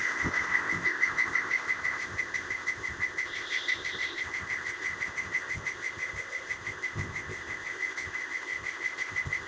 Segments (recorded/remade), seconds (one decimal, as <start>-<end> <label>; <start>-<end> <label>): 0.0-9.5 remade